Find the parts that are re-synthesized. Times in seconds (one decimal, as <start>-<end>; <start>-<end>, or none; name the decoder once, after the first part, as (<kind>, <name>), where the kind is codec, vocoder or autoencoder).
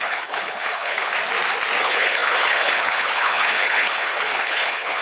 0.0-1.1 (codec, HILCodec); 1.8-5.0